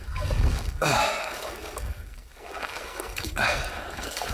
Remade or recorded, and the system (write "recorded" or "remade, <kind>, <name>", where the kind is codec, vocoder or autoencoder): remade, codec, SNAC